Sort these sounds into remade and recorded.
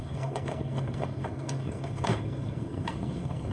remade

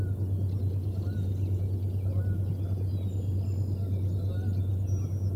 recorded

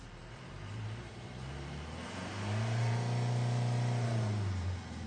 remade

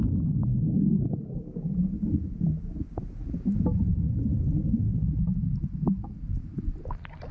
recorded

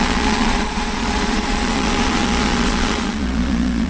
remade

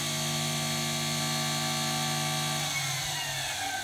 recorded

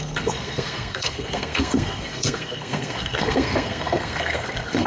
remade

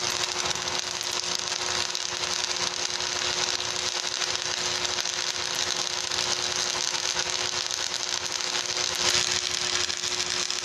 recorded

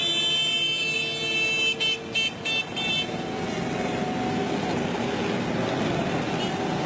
recorded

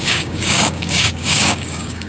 remade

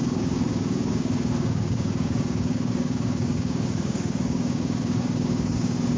remade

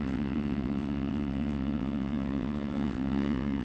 remade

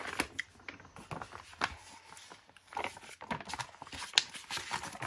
recorded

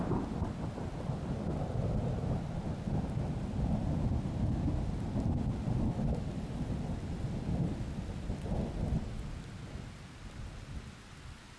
recorded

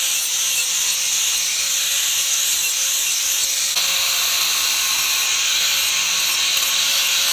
recorded